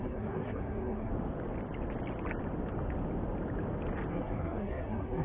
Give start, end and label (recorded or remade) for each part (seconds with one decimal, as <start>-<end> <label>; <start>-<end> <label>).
0.0-1.1 remade; 1.1-4.1 recorded; 4.1-5.2 remade